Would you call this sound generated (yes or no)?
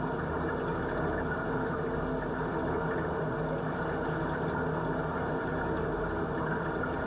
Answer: no